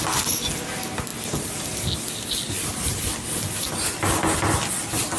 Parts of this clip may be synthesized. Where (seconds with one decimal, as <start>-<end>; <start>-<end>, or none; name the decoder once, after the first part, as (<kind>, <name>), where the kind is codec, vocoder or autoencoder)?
none